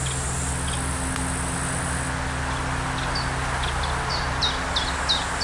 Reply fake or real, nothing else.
real